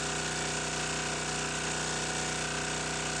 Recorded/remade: recorded